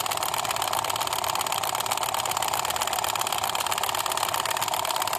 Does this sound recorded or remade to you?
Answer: recorded